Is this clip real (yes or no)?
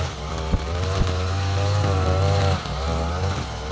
yes